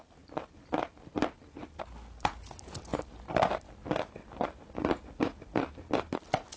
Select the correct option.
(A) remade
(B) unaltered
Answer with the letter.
B